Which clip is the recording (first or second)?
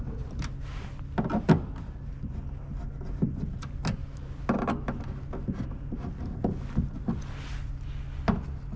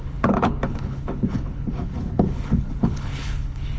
first